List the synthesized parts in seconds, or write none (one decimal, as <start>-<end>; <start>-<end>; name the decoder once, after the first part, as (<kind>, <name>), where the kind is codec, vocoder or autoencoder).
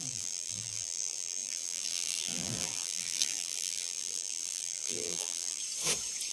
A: 0.0-5.6 (vocoder, BigVGAN v2)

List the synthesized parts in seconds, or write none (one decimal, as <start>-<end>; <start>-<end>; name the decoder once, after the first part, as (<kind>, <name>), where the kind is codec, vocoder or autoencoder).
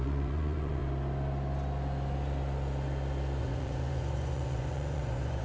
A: 0.0-0.8 (vocoder, Vocos); 3.4-5.4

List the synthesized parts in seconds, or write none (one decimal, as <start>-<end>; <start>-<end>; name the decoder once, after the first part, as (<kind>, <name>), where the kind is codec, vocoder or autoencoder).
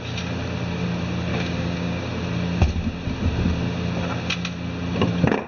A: 1.3-2.0 (codec, DAC)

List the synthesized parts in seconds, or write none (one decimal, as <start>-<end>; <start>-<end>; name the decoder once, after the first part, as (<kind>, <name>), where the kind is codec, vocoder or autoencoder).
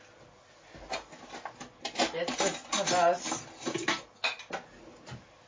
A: none